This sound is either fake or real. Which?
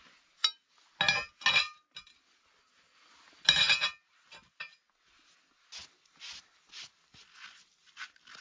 real